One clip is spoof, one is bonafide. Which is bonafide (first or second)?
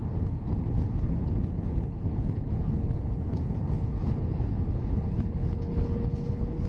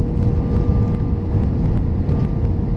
second